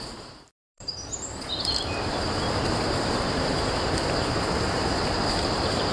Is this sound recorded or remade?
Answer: remade